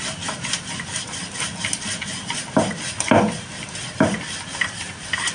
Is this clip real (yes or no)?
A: yes